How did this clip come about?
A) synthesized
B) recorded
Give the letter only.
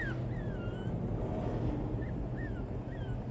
B